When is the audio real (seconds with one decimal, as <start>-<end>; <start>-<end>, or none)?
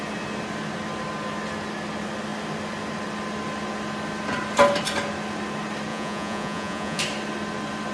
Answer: 0.0-5.9; 7.0-7.9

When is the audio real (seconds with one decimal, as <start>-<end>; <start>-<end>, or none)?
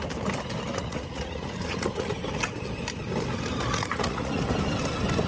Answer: 0.0-0.7; 2.1-3.7; 4.4-5.3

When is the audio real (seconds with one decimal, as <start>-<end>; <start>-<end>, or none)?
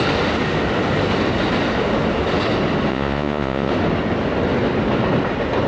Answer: 0.0-2.9; 3.7-5.7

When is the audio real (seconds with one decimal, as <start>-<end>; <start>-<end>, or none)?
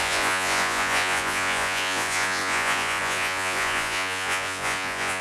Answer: none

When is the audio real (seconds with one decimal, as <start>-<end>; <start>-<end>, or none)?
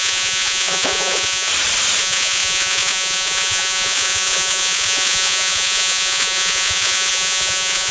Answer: 1.5-2.0